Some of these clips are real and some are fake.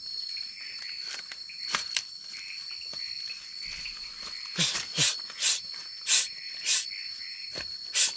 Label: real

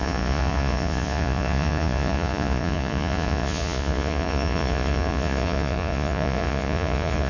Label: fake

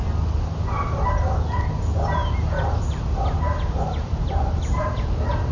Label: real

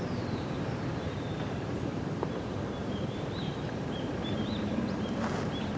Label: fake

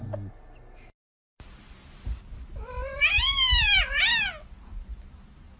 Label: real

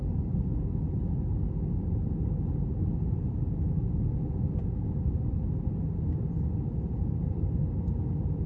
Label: real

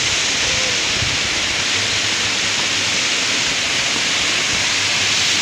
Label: real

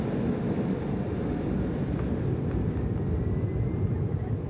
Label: real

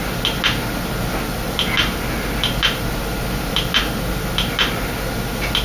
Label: real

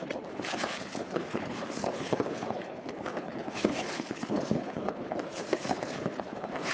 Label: fake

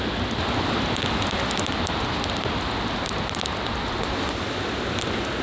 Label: real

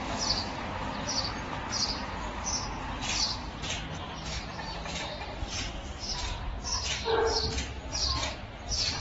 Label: real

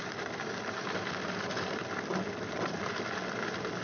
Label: fake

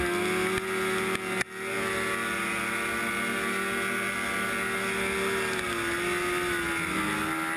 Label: real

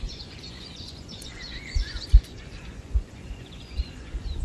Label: fake